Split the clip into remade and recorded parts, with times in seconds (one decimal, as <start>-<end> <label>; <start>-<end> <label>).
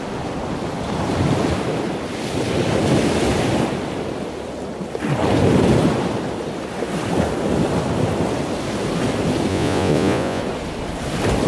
0.0-9.5 recorded; 9.5-10.4 remade; 10.4-11.5 recorded